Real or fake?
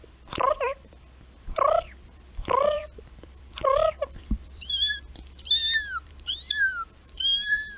fake